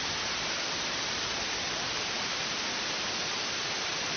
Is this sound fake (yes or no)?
no